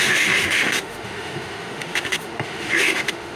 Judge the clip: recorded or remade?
remade